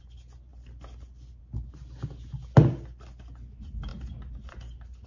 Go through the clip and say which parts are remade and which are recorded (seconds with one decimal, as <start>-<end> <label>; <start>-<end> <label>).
0.0-5.1 recorded